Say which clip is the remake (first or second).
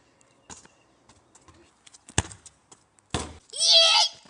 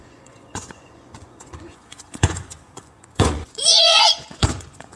second